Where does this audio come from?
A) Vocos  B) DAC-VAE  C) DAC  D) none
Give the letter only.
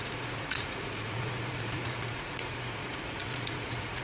A